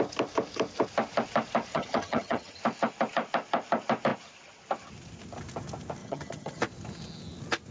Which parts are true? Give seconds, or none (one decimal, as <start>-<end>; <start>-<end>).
0.0-1.7; 2.6-6.0; 6.6-7.7